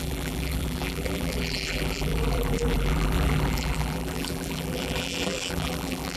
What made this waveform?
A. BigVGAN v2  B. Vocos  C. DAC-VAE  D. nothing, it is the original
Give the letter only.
A